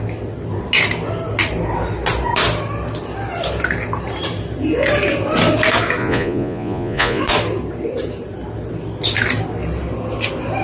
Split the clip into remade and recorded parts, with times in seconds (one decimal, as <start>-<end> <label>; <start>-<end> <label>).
0.0-6.0 recorded; 6.0-7.2 remade; 7.2-10.6 recorded